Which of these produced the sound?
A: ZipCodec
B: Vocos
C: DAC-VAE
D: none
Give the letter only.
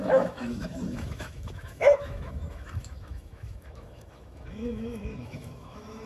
C